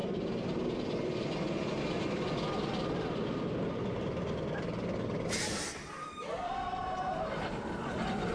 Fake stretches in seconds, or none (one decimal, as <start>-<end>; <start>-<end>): none

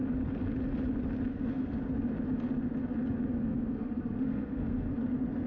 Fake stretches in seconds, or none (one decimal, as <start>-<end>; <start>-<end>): 1.3-2.0; 3.3-4.9

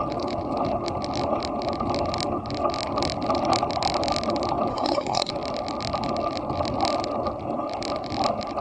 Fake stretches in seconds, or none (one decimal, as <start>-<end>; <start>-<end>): 4.7-5.3

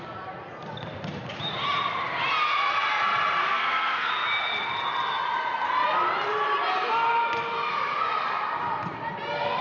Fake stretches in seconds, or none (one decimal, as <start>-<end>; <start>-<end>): 3.4-4.1

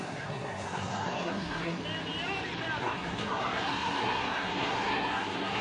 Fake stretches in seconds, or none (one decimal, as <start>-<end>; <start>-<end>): 0.0-1.8; 2.8-5.6

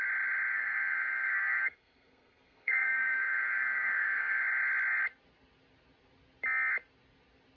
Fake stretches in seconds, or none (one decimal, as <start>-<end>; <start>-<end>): 0.5-4.4

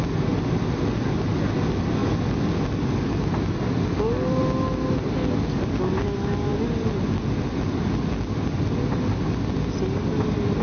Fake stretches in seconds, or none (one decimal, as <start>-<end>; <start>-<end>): none